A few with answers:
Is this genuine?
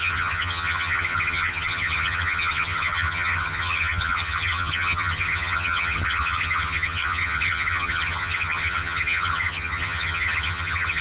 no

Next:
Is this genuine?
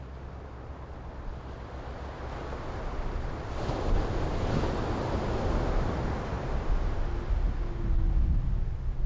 yes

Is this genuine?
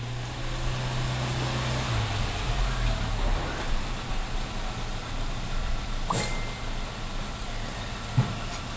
yes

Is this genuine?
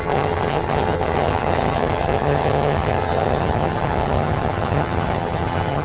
no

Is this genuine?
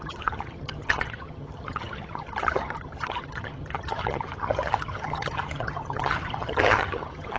no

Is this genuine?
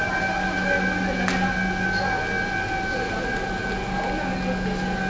yes